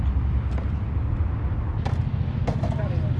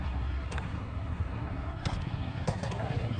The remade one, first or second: second